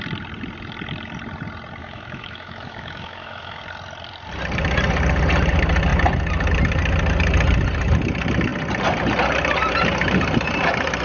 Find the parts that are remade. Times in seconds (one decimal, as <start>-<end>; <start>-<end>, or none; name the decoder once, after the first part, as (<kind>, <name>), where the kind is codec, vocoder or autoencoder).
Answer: 1.8-3.6 (autoencoder, DAC-VAE)